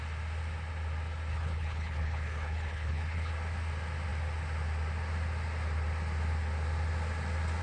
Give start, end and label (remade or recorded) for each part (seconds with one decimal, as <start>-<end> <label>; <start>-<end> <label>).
0.0-1.3 recorded; 1.3-3.3 remade; 3.3-7.6 recorded